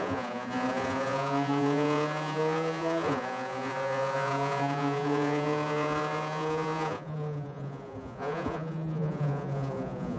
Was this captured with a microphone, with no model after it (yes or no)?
no